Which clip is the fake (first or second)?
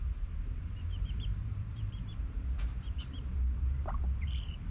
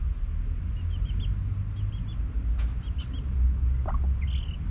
first